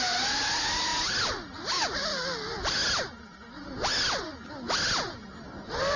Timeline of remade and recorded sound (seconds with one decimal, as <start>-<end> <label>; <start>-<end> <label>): 0.0-6.0 recorded